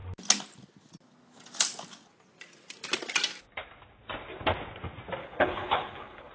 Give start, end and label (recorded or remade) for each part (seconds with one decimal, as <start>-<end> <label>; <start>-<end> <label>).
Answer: 0.0-5.2 recorded; 5.2-6.3 remade